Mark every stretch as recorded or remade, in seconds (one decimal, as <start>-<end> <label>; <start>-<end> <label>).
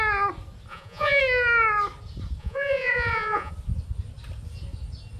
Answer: 0.0-0.7 recorded; 0.7-1.2 remade; 1.2-2.4 recorded; 2.4-3.5 remade; 3.5-5.2 recorded